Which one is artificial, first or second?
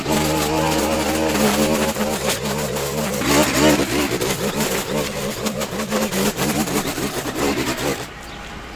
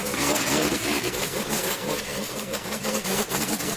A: second